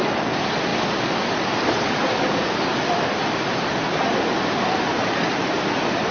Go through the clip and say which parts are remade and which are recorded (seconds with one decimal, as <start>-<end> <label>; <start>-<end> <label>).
0.0-6.1 recorded